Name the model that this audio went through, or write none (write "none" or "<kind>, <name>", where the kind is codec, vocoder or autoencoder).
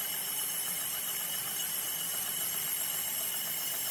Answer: none